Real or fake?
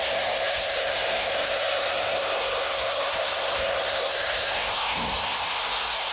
fake